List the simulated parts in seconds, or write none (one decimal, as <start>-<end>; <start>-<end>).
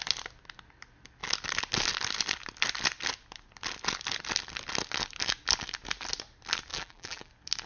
6.7-7.3